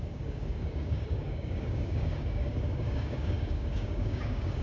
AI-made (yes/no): yes